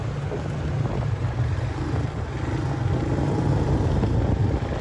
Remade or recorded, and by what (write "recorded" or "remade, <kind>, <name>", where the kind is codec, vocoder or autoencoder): recorded